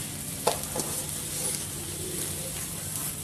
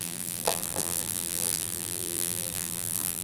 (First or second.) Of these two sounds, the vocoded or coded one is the second